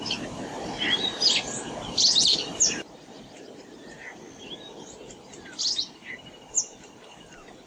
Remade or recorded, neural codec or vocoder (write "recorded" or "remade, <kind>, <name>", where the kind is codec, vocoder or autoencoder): remade, vocoder, BigVGAN v2